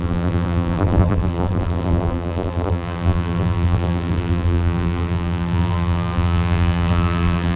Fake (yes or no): yes